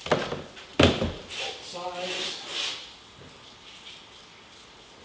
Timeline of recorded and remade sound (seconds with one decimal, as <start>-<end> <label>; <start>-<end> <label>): 0.0-2.5 remade; 2.5-5.0 recorded

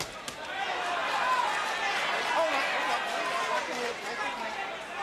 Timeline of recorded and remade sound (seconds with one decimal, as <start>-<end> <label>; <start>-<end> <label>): 0.0-1.0 remade; 1.0-3.6 recorded; 3.6-5.0 remade

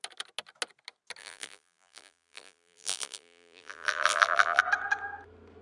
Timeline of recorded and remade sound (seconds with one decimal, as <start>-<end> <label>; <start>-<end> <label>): 0.0-1.2 recorded; 1.2-4.6 remade; 4.6-5.6 recorded

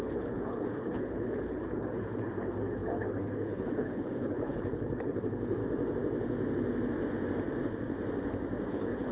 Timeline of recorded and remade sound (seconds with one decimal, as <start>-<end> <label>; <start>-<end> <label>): 0.0-5.6 remade; 5.6-8.7 recorded; 8.7-9.1 remade